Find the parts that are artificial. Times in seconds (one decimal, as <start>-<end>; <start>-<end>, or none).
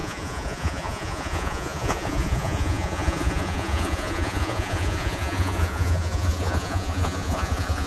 0.0-7.9